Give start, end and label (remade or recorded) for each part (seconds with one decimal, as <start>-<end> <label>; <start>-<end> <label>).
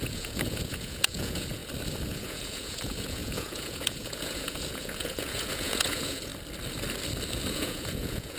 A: 0.0-1.6 remade; 1.6-2.1 recorded; 2.1-6.3 remade; 6.3-7.5 recorded; 7.5-8.4 remade